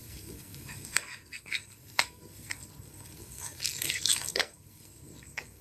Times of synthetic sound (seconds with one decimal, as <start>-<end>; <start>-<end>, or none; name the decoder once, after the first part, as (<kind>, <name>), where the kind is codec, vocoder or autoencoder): 0.0-5.6 (codec, SNAC)